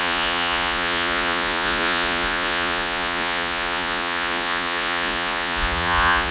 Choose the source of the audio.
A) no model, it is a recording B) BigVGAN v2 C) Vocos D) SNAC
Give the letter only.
C